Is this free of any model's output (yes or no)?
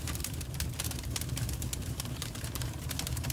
no